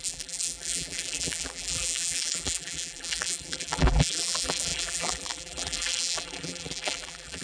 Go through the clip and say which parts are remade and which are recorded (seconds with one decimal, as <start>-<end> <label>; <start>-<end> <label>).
0.0-7.4 remade